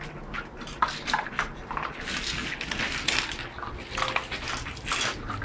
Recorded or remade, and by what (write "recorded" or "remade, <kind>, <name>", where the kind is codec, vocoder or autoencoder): recorded